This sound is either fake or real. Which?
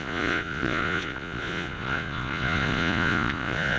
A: fake